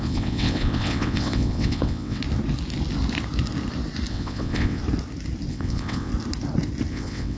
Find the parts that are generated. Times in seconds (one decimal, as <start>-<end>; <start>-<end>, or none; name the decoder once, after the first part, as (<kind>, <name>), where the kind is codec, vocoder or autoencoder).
0.0-2.2 (vocoder, WaveNeXt); 4.1-4.8; 5.5-6.1; 6.9-7.4